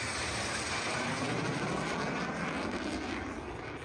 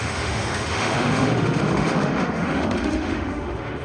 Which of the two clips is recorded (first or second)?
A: first